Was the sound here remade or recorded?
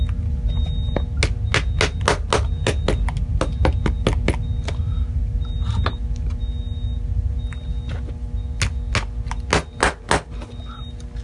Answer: recorded